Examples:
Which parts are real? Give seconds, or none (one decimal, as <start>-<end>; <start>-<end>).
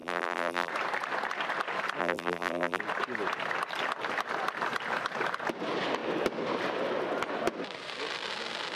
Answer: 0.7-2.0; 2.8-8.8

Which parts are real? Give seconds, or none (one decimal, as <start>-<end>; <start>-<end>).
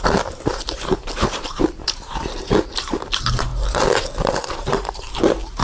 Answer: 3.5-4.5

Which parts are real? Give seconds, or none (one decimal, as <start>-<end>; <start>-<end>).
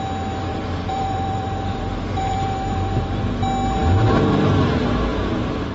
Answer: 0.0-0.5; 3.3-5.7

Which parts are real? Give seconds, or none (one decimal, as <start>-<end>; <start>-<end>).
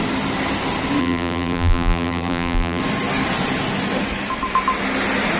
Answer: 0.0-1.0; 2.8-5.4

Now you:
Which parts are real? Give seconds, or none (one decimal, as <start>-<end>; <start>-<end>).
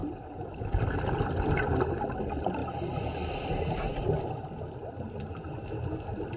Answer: 0.0-2.6; 3.3-4.4; 5.6-6.4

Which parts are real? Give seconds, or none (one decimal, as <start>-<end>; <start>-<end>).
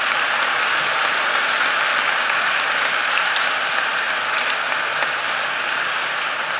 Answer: 0.0-1.9; 2.5-6.6